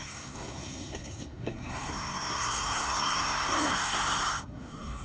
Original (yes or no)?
no